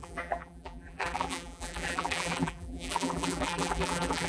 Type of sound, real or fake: fake